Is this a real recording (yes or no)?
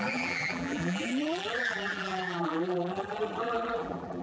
no